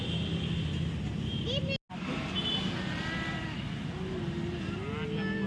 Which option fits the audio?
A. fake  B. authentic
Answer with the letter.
B